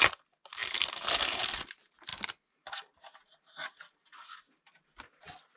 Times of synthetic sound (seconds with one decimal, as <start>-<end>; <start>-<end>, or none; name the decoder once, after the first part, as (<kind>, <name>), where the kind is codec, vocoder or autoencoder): none